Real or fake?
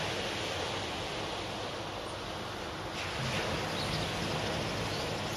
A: real